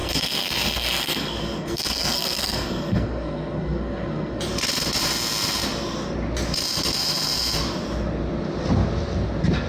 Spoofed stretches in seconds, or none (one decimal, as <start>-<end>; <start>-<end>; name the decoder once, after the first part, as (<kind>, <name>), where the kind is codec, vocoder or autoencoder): 0.0-4.4 (codec, SNAC)